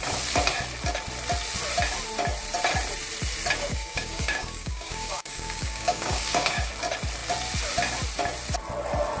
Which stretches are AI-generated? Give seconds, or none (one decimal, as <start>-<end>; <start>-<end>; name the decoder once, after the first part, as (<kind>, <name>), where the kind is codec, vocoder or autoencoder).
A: 3.7-6.7 (codec, DAC)